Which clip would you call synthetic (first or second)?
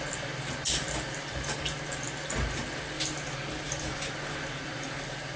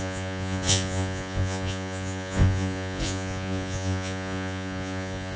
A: second